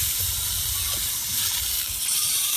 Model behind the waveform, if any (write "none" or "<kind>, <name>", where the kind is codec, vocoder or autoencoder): none